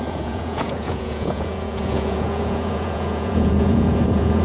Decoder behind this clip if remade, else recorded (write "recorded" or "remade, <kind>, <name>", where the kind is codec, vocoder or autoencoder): remade, vocoder, Vocos